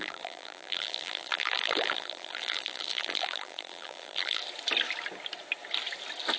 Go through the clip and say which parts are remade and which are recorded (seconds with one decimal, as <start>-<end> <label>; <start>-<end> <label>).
0.0-4.4 remade; 4.4-6.4 recorded